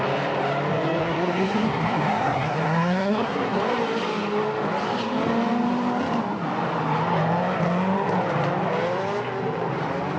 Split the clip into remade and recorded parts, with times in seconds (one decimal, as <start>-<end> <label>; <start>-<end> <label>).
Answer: 0.0-1.0 recorded; 1.0-3.6 remade; 3.6-10.2 recorded